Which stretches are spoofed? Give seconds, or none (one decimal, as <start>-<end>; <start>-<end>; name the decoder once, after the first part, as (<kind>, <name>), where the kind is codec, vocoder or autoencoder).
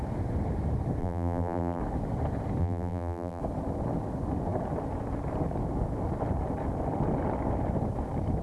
1.0-1.8 (vocoder, BigVGAN v2); 2.6-3.4